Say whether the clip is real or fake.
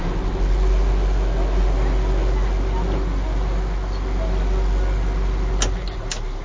real